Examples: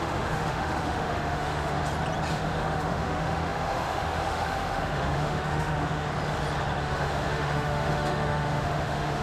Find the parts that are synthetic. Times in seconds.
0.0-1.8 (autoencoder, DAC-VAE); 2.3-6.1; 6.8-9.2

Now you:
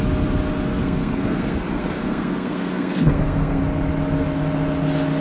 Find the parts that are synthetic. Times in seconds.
0.7-3.6 (codec, SNAC)